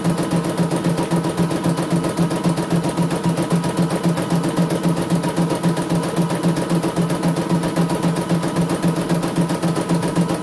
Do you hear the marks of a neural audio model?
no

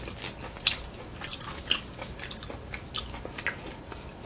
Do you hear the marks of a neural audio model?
no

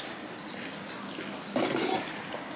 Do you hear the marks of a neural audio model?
no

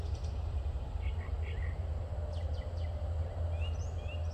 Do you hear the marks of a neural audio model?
no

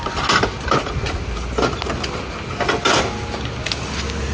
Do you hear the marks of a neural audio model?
no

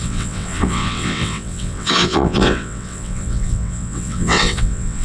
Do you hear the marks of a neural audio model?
yes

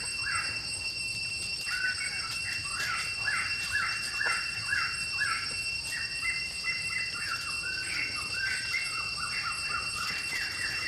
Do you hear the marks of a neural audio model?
yes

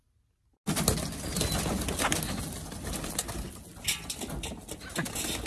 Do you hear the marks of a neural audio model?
no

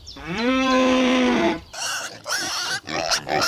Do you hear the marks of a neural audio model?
yes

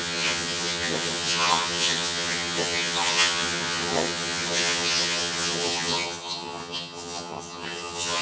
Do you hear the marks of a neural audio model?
yes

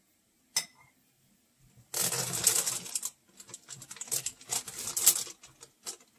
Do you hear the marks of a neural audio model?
no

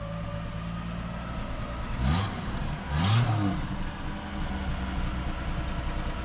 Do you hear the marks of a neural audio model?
no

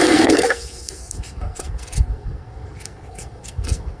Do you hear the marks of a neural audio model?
yes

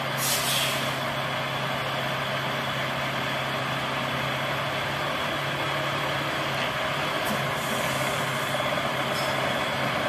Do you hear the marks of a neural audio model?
no